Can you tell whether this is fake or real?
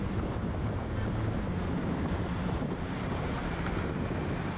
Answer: fake